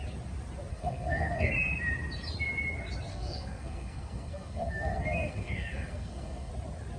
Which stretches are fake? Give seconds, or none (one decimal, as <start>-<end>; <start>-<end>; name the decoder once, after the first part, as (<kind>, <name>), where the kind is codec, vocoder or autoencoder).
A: 0.7-1.5 (codec, SNAC); 3.1-6.5